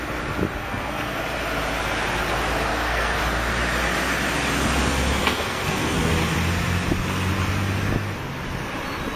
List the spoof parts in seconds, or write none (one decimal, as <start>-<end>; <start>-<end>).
0.6-1.2; 2.7-3.2; 5.2-6.1